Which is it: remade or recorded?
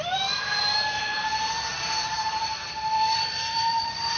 remade